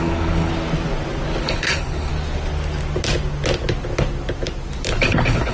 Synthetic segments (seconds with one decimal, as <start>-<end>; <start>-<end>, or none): 0.0-0.5; 1.4-2.1; 5.0-5.5